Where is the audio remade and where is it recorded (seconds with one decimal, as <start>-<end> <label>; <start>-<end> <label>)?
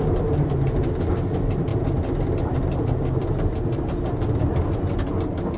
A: 0.0-5.6 recorded